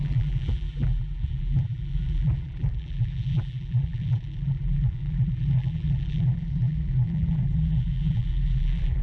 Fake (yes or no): yes